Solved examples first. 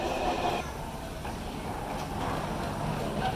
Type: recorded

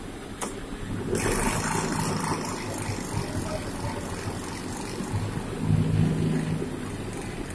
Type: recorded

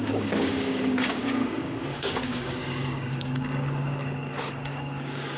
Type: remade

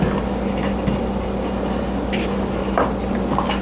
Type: recorded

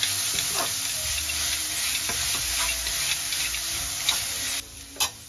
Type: recorded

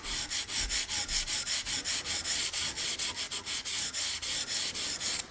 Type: recorded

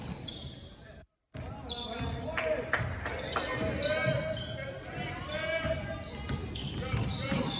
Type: recorded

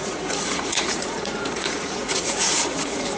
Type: remade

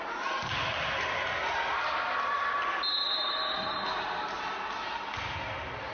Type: recorded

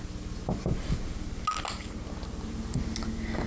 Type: recorded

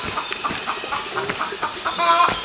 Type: recorded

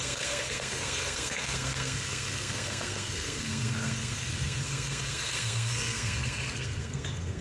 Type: remade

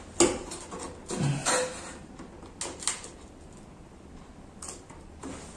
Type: recorded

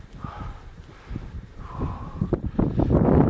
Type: recorded